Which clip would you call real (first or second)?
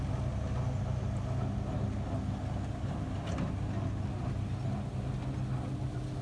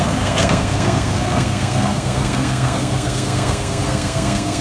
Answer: first